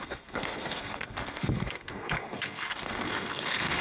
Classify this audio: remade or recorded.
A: remade